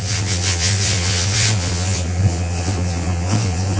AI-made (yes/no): yes